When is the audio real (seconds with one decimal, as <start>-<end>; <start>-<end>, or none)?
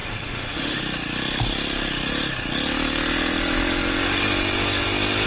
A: 0.8-5.3